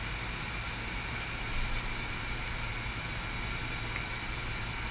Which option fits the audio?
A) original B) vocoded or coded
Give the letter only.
A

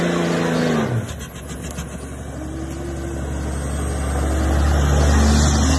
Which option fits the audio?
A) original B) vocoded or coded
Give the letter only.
A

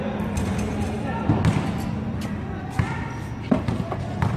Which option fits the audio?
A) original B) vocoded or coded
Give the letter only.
A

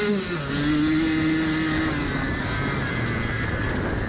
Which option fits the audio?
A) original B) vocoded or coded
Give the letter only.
A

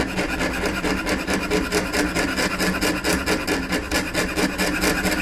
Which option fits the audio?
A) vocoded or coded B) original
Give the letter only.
B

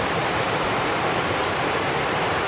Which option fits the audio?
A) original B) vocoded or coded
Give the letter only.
B